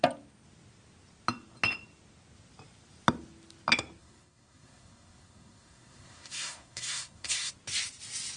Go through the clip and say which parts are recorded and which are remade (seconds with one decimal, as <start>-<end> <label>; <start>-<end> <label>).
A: 0.0-4.0 recorded; 4.0-7.5 remade; 7.5-8.4 recorded